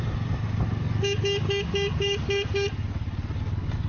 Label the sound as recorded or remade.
recorded